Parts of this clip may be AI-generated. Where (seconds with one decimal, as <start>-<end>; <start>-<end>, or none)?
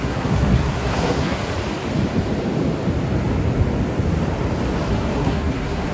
0.0-1.4; 4.9-5.9